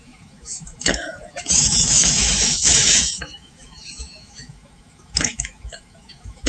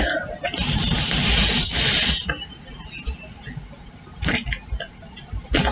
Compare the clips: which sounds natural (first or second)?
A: second